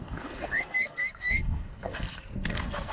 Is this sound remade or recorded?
remade